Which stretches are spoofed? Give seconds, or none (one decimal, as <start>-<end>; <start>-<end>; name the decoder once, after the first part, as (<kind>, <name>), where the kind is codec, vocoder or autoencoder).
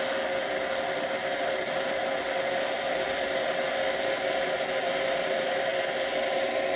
none